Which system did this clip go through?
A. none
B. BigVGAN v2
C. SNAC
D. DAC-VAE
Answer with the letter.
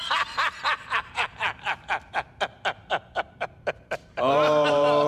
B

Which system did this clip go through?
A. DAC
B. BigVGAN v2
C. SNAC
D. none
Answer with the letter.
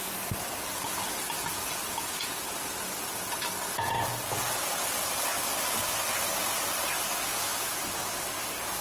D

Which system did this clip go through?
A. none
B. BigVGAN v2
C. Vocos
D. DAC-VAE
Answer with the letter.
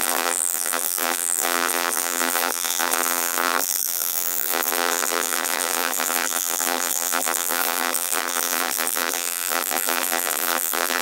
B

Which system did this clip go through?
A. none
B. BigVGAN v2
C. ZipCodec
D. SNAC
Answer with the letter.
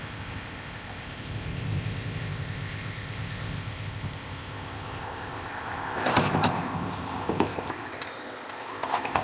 C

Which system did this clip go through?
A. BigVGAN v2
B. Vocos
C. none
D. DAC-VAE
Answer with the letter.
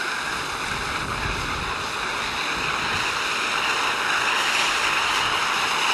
C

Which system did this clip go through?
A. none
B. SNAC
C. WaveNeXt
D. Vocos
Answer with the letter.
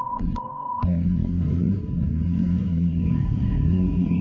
B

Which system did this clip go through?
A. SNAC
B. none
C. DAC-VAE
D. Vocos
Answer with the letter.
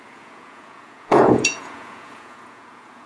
D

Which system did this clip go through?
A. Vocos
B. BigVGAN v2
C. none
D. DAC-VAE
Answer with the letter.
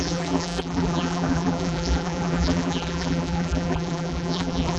B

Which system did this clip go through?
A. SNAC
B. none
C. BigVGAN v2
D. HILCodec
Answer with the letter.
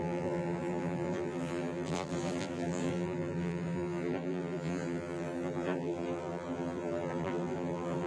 C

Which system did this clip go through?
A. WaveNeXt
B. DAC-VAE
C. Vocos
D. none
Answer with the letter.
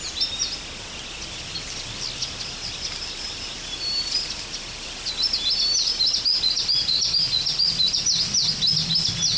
D